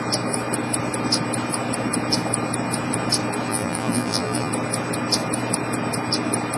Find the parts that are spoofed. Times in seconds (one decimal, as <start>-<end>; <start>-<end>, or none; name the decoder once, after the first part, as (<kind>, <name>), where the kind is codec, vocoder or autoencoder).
3.5-4.5 (vocoder, BigVGAN v2)